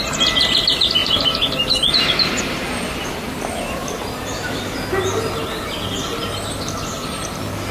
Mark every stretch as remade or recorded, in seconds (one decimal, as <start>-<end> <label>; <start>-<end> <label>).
0.0-7.7 recorded